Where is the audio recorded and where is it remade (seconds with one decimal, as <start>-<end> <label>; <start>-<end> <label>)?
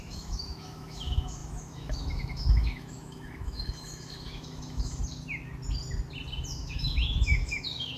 0.0-5.0 remade; 5.0-6.6 recorded; 6.6-8.0 remade